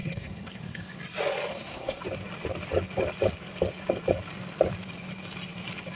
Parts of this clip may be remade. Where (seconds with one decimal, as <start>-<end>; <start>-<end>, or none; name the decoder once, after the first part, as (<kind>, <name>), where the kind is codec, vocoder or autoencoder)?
0.0-1.0 (codec, SNAC); 1.5-2.0

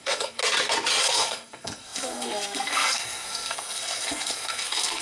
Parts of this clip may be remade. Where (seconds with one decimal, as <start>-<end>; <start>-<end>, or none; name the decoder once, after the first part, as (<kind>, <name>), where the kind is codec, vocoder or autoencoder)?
0.0-0.4 (codec, SNAC); 1.0-5.0

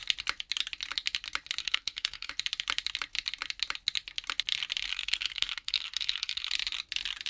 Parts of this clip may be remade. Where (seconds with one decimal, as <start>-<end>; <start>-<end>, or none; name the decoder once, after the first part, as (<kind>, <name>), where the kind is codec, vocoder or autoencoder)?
1.6-2.3 (codec, SNAC); 4.9-6.5

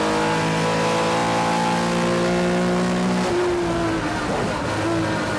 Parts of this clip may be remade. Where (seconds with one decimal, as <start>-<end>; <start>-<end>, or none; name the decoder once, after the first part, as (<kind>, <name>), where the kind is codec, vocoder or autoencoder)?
none